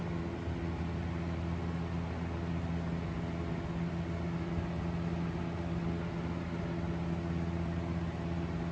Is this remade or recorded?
recorded